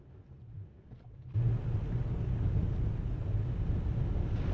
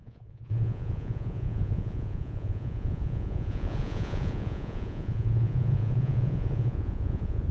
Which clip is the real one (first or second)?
first